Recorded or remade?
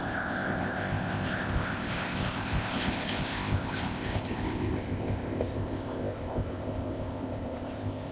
remade